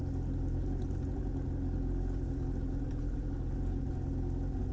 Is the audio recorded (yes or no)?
yes